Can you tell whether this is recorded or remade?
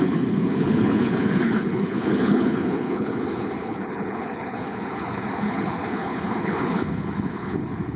remade